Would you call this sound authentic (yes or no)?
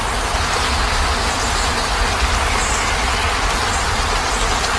yes